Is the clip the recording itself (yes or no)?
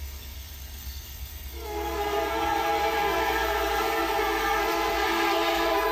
no